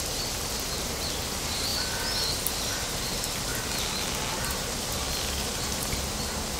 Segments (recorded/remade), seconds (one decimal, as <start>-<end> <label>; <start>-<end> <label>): 0.0-1.7 remade; 1.7-2.3 recorded; 2.3-3.5 remade; 3.5-4.8 recorded; 4.8-6.6 remade